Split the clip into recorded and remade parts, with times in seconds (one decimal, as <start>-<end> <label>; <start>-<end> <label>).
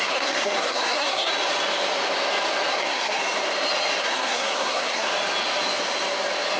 0.0-1.3 remade; 1.3-2.7 recorded; 2.7-3.2 remade; 3.2-4.0 recorded; 4.0-5.1 remade; 5.1-6.6 recorded